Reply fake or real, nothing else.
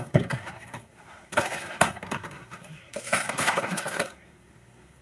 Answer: fake